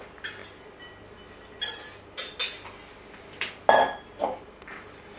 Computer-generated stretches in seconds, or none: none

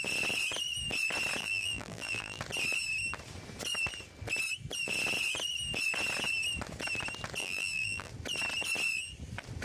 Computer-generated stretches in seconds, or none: 1.4-2.4 (vocoder, BigVGAN v2); 7.4-8.1

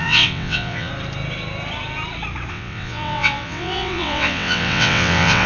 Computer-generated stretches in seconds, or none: 0.0-0.9 (vocoder, WaveNeXt); 2.5-5.5